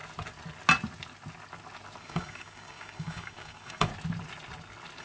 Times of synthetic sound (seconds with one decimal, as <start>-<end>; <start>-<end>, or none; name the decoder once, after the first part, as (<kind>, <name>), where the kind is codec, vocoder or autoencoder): 2.0-3.9 (codec, DAC)